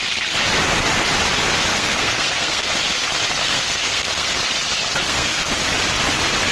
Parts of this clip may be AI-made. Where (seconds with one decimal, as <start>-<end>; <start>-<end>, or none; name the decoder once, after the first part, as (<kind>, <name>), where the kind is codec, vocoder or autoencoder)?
1.7-2.7 (codec, SNAC); 3.4-4.3; 5.0-5.5